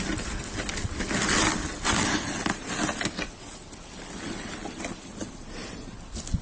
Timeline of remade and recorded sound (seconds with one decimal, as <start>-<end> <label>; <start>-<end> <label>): 0.0-6.4 recorded